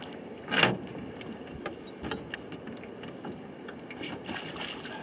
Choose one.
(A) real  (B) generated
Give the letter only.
A